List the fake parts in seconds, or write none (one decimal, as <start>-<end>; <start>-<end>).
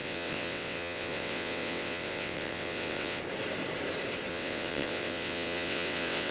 0.0-3.2; 4.3-6.3